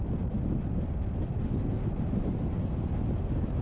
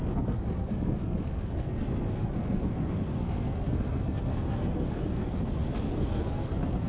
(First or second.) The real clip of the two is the first